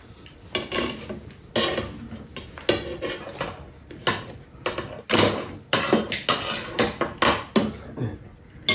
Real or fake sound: real